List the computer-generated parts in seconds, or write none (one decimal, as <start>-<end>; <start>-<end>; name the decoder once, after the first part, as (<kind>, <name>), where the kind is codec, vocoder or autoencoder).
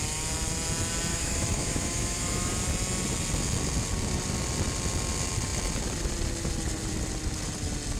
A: 1.1-2.5 (autoencoder, DAC-VAE)